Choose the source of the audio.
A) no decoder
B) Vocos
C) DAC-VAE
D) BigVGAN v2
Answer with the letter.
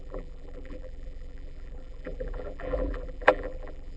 D